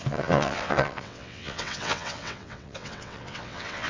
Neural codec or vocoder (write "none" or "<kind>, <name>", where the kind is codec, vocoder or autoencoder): vocoder, WaveNeXt